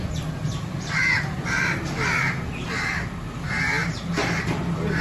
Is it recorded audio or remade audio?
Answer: recorded